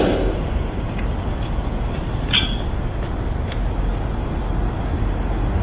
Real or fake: real